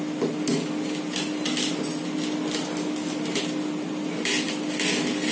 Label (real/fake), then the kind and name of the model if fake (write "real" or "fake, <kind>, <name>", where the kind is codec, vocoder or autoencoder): real